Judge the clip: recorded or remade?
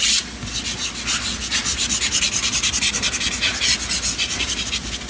recorded